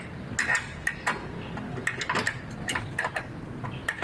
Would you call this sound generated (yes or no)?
no